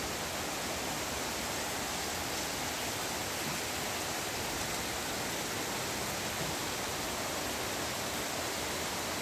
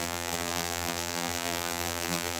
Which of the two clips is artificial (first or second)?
second